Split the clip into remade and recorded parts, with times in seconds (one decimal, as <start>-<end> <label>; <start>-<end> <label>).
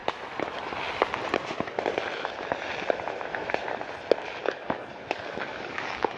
0.0-4.4 recorded; 4.4-6.2 remade